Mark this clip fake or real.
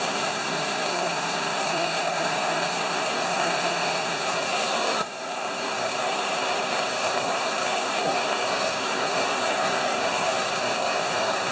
fake